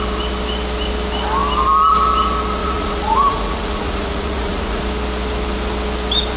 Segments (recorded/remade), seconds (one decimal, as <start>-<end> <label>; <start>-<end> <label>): 0.0-2.6 recorded; 2.6-4.8 remade; 4.8-6.4 recorded